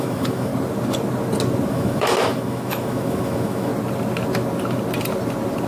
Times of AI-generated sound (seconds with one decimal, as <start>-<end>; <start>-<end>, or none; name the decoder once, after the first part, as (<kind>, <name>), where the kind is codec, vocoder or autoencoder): 0.0-0.5 (autoencoder, DAC-VAE); 1.7-3.7